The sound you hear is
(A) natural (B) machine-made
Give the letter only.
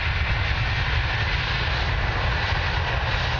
A